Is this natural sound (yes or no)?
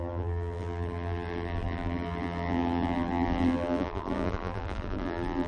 no